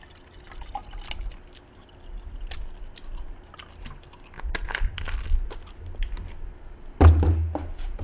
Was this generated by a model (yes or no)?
no